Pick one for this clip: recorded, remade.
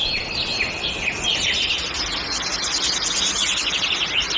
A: recorded